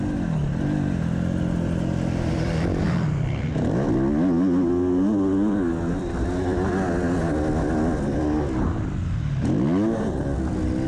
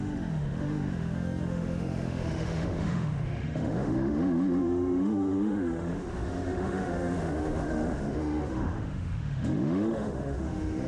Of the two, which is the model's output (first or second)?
second